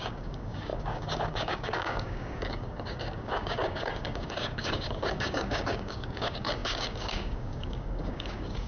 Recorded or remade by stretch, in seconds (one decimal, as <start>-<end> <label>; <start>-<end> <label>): 0.0-8.7 remade